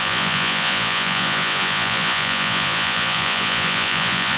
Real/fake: fake